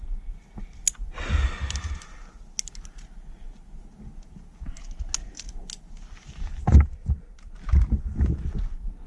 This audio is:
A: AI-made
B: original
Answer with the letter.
B